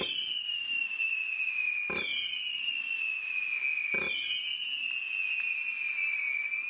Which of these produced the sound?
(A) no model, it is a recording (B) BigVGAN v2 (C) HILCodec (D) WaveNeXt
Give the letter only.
A